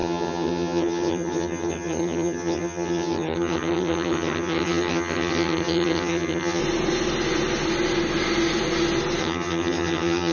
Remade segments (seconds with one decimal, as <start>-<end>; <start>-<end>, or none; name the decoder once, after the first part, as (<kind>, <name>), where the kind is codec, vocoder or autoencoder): 0.0-6.6 (vocoder, HiFi-GAN); 9.2-10.3